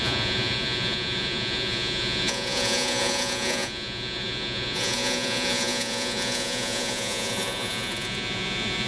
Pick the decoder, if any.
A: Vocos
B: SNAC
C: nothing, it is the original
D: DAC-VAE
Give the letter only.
A